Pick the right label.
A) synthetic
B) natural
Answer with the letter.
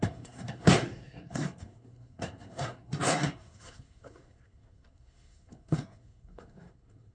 A